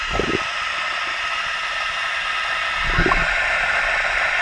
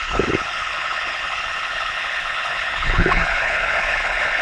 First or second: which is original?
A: first